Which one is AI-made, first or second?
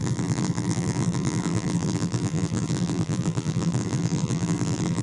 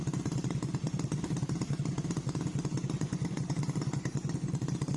first